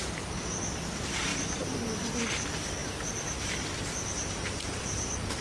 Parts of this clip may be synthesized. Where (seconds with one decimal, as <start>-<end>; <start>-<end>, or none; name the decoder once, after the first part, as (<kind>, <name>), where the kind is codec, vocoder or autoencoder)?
1.3-2.1 (vocoder, BigVGAN v2)